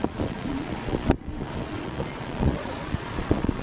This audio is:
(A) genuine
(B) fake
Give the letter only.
B